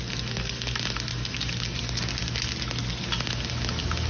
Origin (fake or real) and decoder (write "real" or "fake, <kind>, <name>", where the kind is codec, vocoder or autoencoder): real